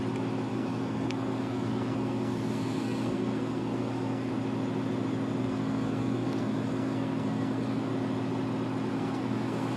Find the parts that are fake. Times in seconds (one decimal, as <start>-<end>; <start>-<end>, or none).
0.5-4.3; 5.4-7.9; 8.9-9.8